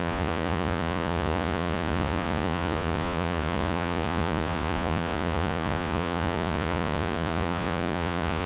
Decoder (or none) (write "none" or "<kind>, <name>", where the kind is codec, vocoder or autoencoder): vocoder, Vocos